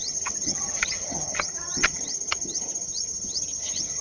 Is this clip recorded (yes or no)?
no